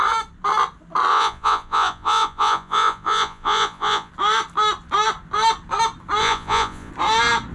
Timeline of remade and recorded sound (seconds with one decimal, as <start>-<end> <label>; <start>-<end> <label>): 0.0-1.1 recorded; 1.1-4.1 remade; 4.1-6.2 recorded; 6.2-6.9 remade; 6.9-7.5 recorded